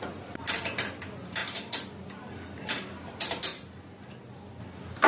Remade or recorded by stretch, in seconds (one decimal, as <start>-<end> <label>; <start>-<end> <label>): 0.0-5.1 recorded